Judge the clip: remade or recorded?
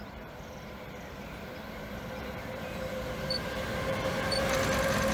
remade